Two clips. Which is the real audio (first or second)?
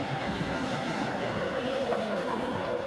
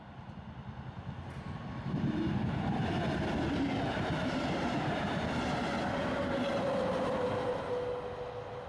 second